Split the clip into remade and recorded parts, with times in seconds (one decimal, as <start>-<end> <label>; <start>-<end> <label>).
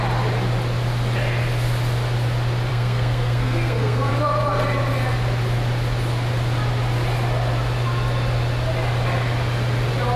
0.0-2.7 recorded; 2.7-4.1 remade; 4.1-10.2 recorded